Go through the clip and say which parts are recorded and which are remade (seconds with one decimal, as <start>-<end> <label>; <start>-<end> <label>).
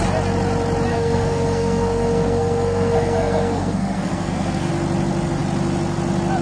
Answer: 0.0-0.9 recorded; 0.9-4.7 remade; 4.7-6.4 recorded